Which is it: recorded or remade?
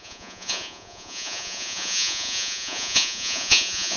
remade